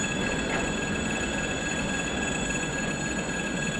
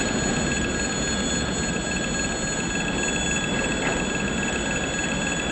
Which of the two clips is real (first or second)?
second